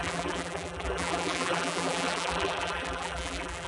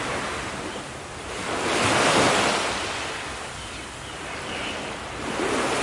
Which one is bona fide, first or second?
second